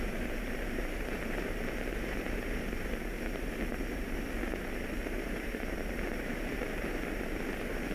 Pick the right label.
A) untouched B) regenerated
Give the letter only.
B